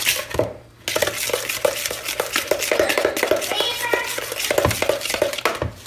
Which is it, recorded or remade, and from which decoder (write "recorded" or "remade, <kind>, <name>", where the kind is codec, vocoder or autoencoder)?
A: recorded